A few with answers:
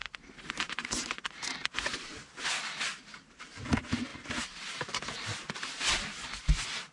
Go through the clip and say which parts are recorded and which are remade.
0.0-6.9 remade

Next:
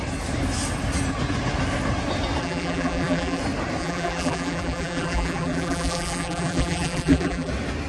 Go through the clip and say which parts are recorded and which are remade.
0.0-2.4 recorded; 2.4-3.4 remade; 3.4-3.8 recorded; 3.8-7.5 remade; 7.5-7.9 recorded

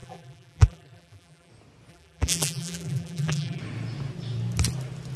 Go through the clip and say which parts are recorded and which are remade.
0.0-1.5 remade; 1.5-1.9 recorded; 1.9-3.6 remade; 3.6-5.2 recorded

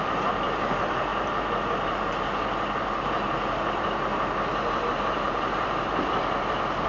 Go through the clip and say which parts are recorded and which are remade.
0.0-1.1 remade; 1.1-4.9 recorded; 4.9-6.9 remade

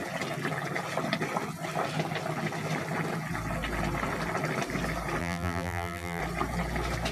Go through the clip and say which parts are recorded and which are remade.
0.0-5.2 recorded; 5.2-6.2 remade; 6.2-7.1 recorded

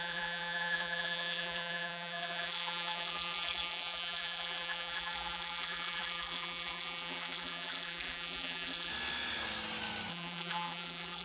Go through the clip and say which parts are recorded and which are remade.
0.0-8.9 remade; 8.9-10.1 recorded; 10.1-11.2 remade

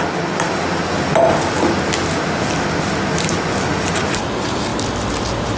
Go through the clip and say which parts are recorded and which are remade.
0.0-5.6 recorded